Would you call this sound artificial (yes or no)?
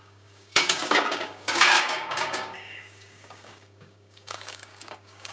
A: yes